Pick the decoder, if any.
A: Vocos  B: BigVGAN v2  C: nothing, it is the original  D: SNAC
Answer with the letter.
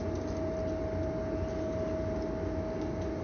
C